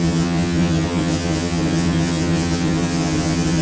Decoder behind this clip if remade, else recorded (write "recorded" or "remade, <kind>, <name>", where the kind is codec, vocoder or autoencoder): remade, vocoder, HiFi-GAN